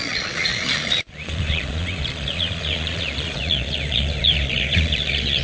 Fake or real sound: fake